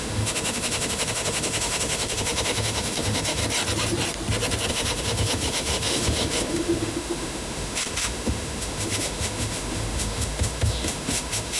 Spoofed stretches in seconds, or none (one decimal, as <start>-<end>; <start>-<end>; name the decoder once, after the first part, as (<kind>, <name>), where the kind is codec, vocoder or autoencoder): 0.0-3.4 (autoencoder, DAC-VAE); 4.7-11.6